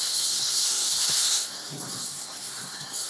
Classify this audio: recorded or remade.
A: remade